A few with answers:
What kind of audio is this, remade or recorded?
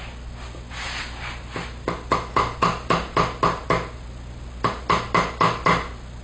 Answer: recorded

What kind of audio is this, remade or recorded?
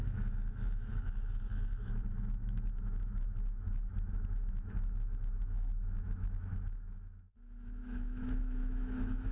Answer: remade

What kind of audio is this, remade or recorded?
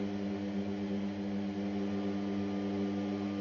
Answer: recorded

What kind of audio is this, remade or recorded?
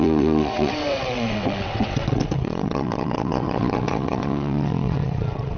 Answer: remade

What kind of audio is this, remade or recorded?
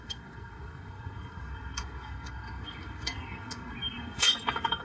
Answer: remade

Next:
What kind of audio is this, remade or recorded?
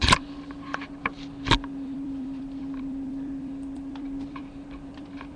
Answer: remade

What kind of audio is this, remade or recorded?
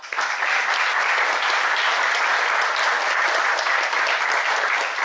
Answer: recorded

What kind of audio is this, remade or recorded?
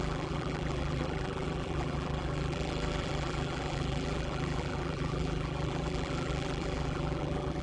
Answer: remade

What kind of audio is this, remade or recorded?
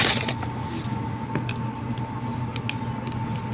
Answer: recorded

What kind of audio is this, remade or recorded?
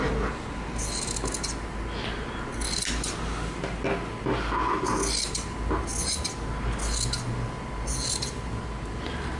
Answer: recorded